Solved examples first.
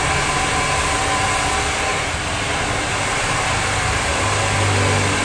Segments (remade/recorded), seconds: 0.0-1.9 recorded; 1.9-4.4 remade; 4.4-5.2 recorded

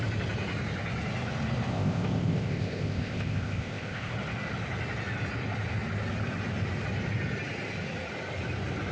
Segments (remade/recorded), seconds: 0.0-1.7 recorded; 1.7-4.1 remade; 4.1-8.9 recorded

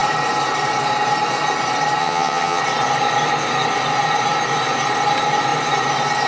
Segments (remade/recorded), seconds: 0.0-2.0 recorded; 2.0-2.6 remade; 2.6-6.3 recorded

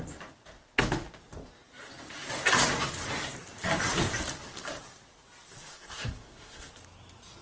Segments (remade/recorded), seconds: 0.0-5.7 recorded; 5.7-6.7 remade; 6.7-7.4 recorded